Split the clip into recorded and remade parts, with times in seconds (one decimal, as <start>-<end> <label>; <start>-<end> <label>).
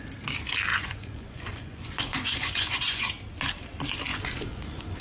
0.0-0.7 recorded; 0.7-3.1 remade; 3.1-4.1 recorded; 4.1-5.0 remade